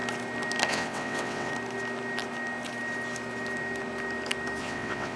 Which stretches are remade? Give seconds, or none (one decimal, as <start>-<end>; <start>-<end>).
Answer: 0.7-1.5; 4.6-5.2